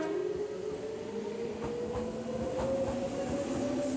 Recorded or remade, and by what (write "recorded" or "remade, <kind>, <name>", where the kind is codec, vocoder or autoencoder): recorded